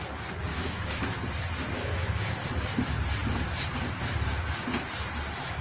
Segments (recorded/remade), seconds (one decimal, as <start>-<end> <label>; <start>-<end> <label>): 0.0-0.5 recorded; 0.5-1.0 remade; 1.0-1.9 recorded; 1.9-2.5 remade; 2.5-5.6 recorded